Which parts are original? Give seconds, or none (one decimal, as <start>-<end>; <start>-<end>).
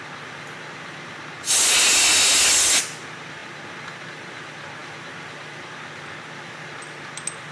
0.0-7.5